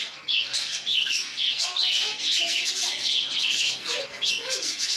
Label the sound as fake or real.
fake